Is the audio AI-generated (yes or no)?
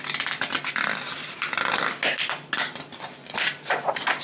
no